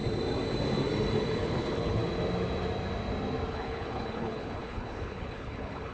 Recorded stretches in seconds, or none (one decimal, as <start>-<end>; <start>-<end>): 0.0-1.4; 2.0-3.5

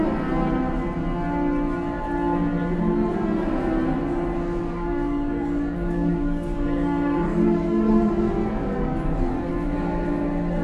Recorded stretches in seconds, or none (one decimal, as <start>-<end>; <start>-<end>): 0.0-4.6; 7.9-8.4; 9.5-10.6

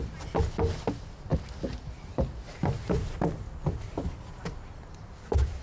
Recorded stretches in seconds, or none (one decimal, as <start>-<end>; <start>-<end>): 0.0-5.6

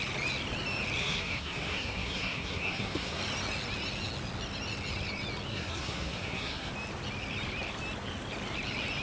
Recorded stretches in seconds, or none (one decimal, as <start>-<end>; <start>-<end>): 0.0-1.0; 3.2-5.5; 6.7-9.0

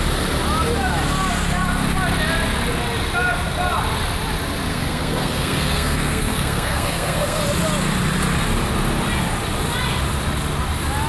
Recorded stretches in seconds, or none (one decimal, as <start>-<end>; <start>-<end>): 0.0-4.7; 7.4-11.1

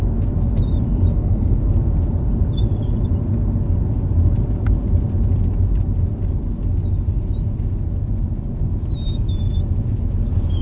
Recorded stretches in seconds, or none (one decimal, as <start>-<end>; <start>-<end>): 0.0-1.1; 1.6-10.6